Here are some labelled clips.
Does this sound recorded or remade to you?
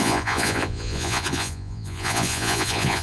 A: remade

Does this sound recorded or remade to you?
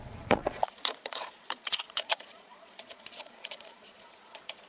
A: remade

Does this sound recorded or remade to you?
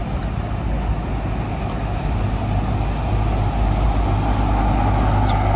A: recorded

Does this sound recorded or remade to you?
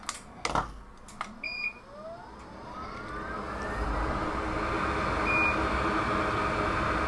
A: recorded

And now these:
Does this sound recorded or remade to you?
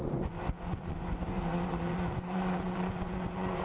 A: remade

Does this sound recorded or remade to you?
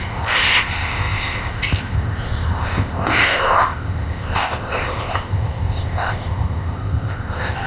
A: remade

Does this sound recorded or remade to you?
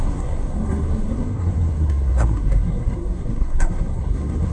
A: remade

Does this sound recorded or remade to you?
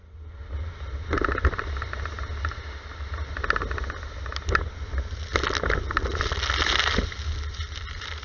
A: recorded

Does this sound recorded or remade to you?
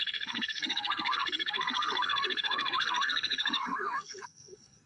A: remade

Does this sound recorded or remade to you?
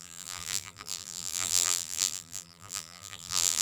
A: remade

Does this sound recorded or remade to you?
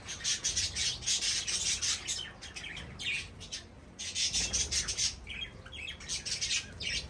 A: recorded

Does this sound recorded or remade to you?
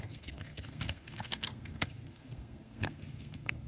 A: remade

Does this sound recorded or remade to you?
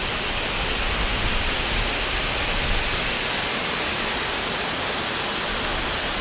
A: recorded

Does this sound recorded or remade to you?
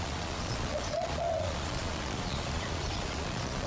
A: remade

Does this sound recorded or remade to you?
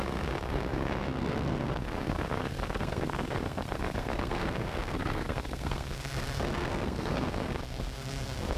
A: remade